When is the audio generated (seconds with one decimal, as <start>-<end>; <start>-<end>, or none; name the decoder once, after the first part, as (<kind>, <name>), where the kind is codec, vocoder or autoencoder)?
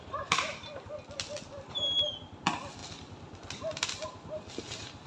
none